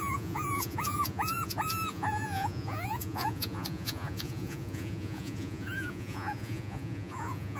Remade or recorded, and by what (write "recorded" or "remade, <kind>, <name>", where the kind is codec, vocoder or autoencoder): remade, vocoder, Vocos